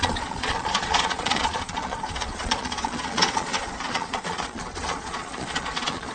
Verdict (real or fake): fake